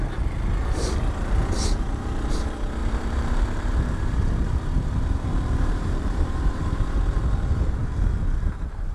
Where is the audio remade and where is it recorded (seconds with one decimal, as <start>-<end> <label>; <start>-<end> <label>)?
0.0-2.8 recorded; 2.8-7.0 remade; 7.0-8.9 recorded